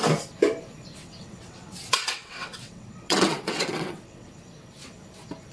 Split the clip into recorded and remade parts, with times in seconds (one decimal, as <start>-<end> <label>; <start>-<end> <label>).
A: 0.0-1.0 recorded; 1.0-4.3 remade; 4.3-5.5 recorded